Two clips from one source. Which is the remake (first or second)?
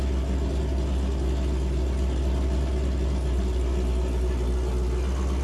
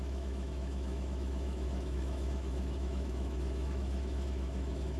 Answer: second